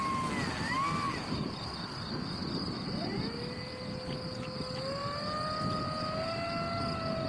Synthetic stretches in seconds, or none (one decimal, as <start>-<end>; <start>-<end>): none